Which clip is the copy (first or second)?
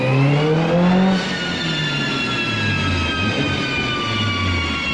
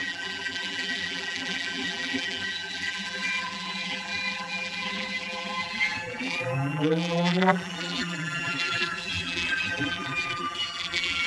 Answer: second